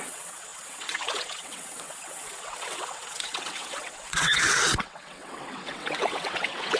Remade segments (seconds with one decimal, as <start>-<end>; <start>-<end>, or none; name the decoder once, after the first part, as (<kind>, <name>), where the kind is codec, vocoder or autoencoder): 0.0-6.8 (vocoder, WaveNeXt)